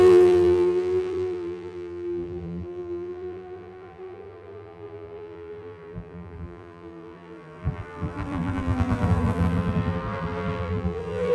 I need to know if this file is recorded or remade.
remade